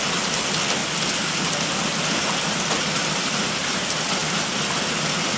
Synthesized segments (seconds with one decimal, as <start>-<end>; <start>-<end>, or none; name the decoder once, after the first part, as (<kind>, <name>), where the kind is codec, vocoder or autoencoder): none